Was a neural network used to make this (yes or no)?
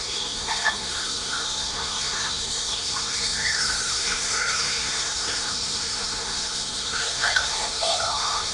yes